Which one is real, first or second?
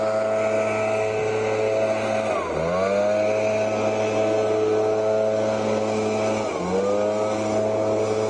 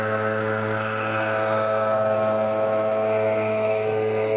first